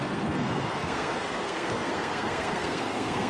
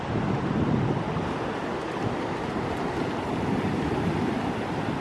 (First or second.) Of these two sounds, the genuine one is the second